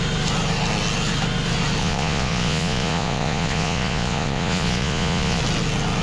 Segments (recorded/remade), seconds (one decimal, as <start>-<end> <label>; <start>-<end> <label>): 0.0-1.8 recorded; 1.8-5.4 remade; 5.4-6.0 recorded